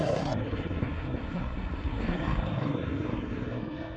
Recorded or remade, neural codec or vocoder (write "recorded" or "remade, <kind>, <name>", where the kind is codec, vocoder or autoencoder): remade, codec, SNAC